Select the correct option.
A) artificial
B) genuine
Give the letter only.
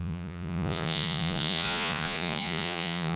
A